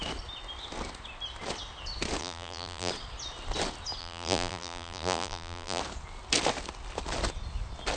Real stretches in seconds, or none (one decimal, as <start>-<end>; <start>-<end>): 0.0-2.2; 2.9-4.0; 5.8-8.0